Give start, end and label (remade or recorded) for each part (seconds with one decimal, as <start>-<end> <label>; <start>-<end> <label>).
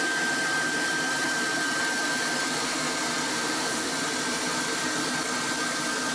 0.0-3.3 recorded; 3.3-3.9 remade; 3.9-6.1 recorded